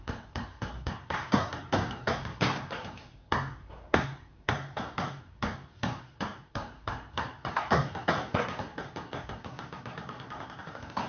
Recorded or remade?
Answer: remade